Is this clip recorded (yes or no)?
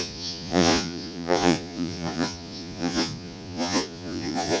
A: no